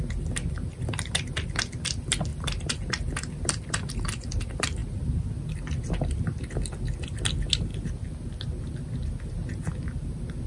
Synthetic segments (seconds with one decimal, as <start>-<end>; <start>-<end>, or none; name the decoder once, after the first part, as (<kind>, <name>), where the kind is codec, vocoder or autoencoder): none